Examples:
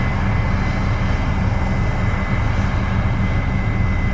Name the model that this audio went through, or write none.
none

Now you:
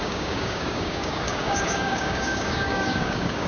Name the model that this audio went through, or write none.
codec, DAC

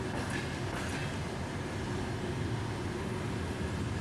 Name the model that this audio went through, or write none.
none